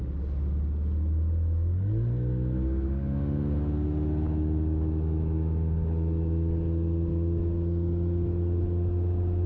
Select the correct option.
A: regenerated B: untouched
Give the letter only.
B